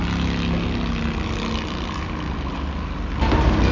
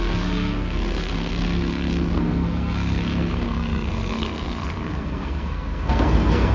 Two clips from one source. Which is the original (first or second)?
first